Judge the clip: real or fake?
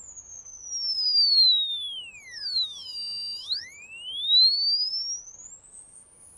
fake